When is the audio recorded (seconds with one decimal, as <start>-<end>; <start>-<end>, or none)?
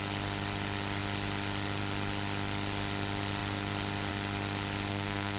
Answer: 0.0-4.9